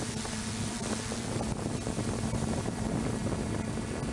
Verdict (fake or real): real